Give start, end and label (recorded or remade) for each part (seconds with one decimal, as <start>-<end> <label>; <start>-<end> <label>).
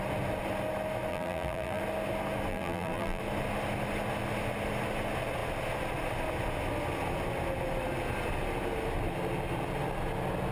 0.0-1.1 recorded; 1.1-1.8 remade; 1.8-2.5 recorded; 2.5-3.2 remade; 3.2-10.5 recorded